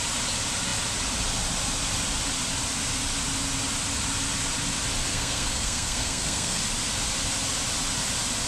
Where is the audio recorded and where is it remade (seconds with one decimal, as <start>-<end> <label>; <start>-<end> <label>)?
0.0-5.1 recorded; 5.1-6.6 remade; 6.6-8.5 recorded